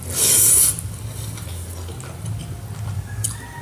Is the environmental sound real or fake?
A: real